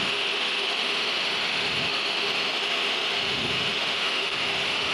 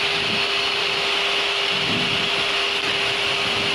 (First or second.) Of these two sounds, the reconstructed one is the first